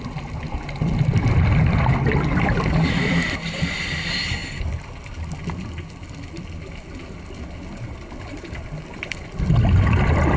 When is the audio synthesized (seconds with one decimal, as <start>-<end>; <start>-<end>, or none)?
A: none